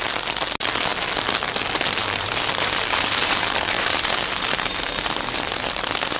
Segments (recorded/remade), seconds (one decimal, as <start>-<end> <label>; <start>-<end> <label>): 0.0-2.0 recorded; 2.0-5.7 remade; 5.7-6.2 recorded